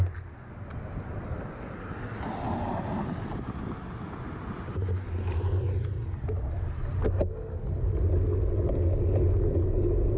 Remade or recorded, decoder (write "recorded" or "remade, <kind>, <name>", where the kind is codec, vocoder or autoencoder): recorded